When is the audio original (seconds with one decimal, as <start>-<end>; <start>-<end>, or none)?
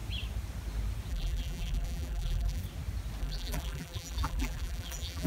0.0-1.1; 2.6-3.2